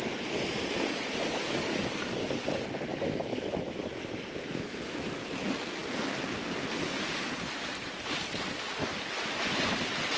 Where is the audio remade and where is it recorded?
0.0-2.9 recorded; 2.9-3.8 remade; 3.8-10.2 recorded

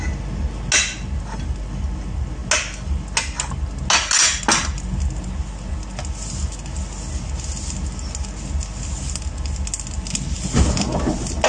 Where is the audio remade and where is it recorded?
0.0-11.5 recorded

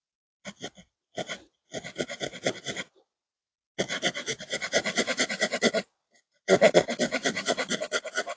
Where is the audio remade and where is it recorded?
0.0-8.4 recorded

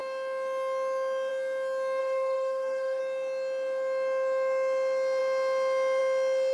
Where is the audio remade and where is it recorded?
0.0-2.0 recorded; 2.0-3.0 remade; 3.0-6.5 recorded

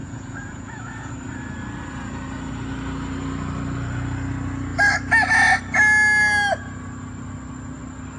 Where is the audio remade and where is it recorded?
0.0-1.1 remade; 1.1-8.2 recorded

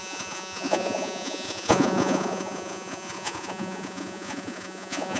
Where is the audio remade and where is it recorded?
0.0-5.2 remade